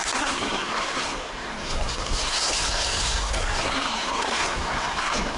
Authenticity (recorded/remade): remade